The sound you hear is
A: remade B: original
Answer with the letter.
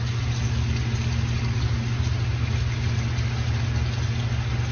B